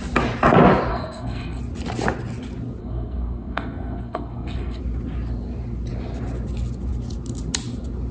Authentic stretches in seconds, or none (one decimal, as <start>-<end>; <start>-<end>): 0.0-0.9; 1.6-2.8; 4.8-8.1